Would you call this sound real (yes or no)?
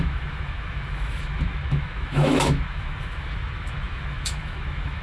no